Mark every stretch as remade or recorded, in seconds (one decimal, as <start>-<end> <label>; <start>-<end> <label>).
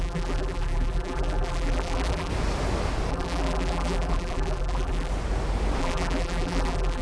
0.0-2.3 remade; 2.3-3.1 recorded; 3.1-5.1 remade; 5.1-5.8 recorded; 5.8-7.0 remade